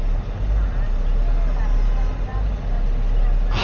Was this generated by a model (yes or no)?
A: no